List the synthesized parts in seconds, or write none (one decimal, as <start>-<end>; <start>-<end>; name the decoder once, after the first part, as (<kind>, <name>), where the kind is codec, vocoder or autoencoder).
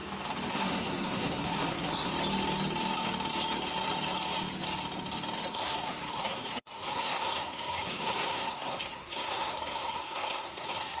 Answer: 0.5-2.1 (codec, SNAC); 5.5-11.0